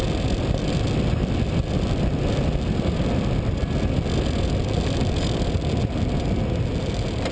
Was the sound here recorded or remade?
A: recorded